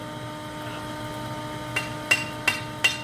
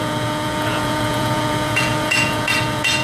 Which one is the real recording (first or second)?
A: first